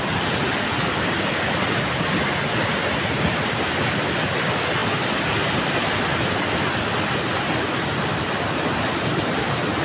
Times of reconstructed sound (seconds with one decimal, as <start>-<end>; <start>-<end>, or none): none